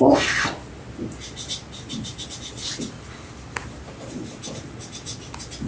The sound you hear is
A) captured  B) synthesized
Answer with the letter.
A